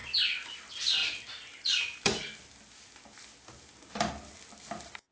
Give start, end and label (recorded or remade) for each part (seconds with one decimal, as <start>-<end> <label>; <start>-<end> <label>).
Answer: 0.0-5.1 recorded